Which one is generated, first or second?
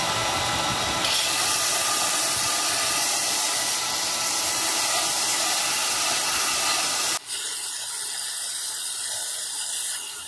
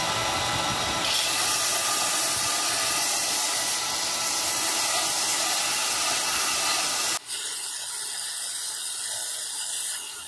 first